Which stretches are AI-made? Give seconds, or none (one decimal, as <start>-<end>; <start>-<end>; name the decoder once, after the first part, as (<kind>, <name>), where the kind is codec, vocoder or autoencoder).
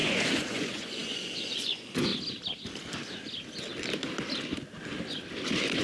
0.0-2.1 (vocoder, Vocos)